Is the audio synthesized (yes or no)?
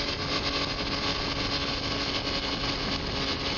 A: no